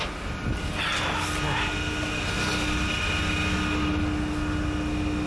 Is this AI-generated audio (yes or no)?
no